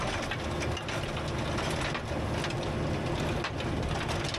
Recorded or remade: recorded